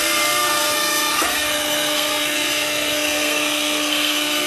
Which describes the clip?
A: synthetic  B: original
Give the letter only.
A